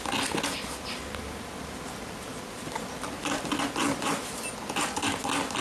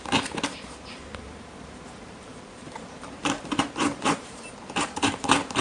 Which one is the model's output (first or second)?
second